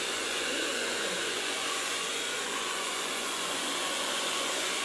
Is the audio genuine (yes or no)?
no